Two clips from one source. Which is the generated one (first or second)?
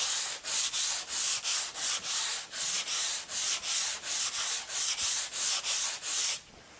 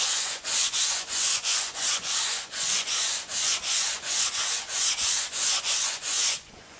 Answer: second